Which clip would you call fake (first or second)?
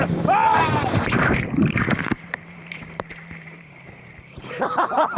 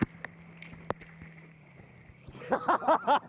first